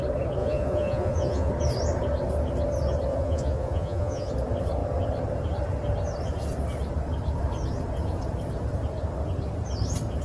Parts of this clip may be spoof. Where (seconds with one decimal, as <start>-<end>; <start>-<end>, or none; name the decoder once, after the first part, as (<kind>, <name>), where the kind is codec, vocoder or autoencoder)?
0.4-1.5 (vocoder, Vocos); 3.1-4.3